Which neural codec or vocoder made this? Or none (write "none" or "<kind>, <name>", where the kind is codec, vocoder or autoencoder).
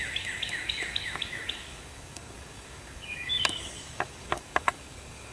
codec, DAC